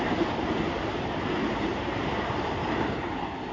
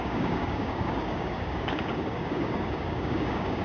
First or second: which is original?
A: first